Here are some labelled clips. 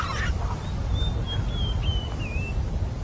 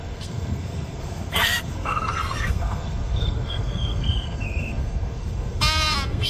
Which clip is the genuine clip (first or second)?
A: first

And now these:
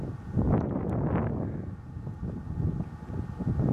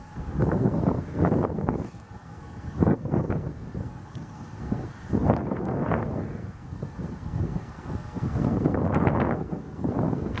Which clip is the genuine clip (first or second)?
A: first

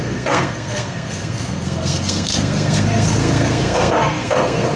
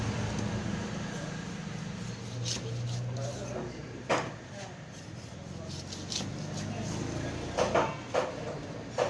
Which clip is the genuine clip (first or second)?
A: second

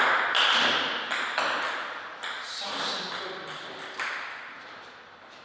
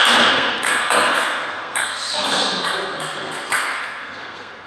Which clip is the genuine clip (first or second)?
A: first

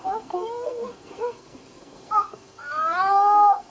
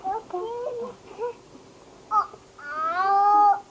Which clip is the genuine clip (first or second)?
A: second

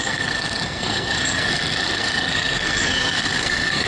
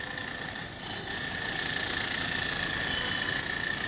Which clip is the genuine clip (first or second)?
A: second